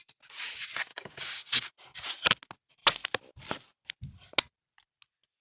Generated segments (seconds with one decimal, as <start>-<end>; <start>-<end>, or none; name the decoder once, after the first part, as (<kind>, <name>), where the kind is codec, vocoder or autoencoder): 0.9-1.7 (codec, DAC)